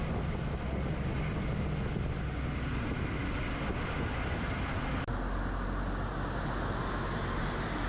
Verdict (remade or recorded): recorded